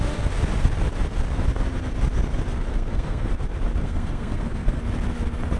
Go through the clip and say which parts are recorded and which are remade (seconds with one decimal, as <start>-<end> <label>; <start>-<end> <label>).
0.0-2.7 recorded; 2.7-3.3 remade; 3.3-3.8 recorded; 3.8-4.8 remade; 4.8-5.6 recorded